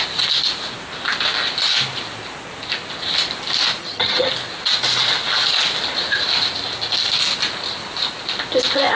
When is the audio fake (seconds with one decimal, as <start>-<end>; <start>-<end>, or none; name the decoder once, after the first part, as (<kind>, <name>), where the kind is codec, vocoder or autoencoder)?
3.8-4.3 (vocoder, HiFi-GAN)